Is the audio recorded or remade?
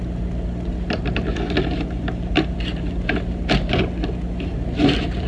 recorded